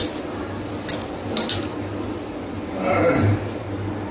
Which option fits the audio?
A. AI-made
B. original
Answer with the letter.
B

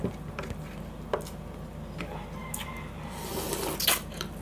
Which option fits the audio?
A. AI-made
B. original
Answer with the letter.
B